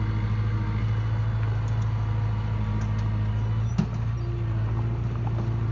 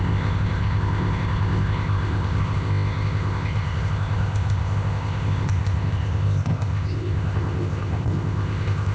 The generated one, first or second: second